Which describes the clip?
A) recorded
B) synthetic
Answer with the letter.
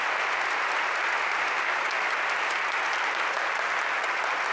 A